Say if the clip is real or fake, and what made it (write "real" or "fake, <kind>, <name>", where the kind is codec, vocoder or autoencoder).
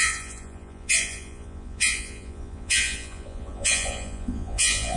fake, vocoder, Vocos